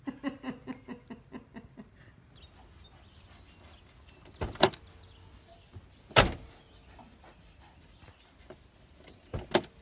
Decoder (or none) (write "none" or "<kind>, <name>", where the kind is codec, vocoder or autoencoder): none